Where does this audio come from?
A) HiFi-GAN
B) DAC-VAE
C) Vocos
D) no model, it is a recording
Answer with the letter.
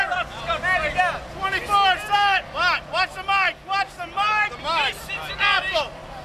D